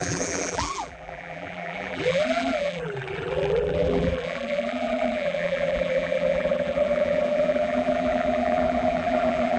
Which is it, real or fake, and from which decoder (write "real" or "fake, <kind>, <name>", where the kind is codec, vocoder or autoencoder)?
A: fake, vocoder, BigVGAN v2